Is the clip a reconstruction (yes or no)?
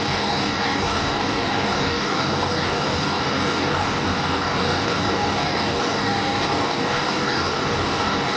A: yes